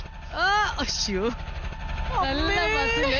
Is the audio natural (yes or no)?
yes